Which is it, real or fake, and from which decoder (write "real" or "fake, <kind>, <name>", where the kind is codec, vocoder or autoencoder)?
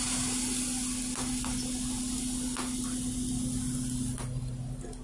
real